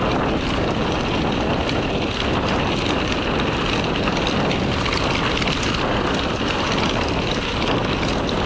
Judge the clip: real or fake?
real